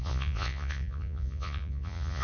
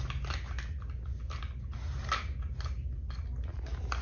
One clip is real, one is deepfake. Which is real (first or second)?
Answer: second